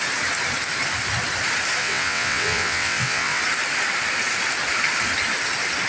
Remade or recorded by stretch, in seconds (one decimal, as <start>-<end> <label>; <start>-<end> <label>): 0.0-1.8 recorded; 1.8-3.4 remade; 3.4-5.9 recorded